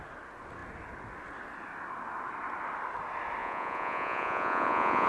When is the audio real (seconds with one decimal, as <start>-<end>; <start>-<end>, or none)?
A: 0.0-3.4